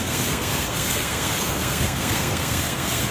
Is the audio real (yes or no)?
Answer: no